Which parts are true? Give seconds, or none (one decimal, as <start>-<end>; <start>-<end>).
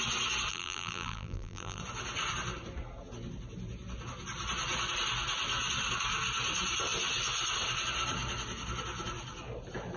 0.0-0.5; 1.8-10.0